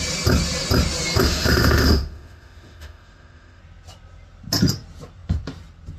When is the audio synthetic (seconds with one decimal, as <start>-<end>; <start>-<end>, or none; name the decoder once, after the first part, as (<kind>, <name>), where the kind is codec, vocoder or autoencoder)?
1.2-3.6 (autoencoder, DAC-VAE)